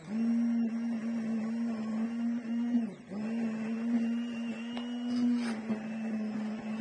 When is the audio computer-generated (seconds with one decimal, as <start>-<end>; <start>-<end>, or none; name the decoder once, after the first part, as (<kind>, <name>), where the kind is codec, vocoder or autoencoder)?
none